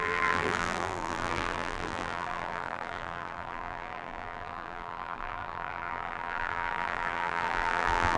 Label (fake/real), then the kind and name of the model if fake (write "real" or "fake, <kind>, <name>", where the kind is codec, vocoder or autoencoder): fake, vocoder, BigVGAN v2